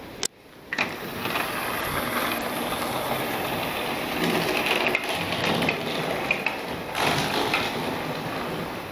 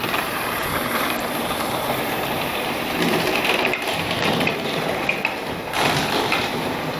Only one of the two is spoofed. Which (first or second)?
second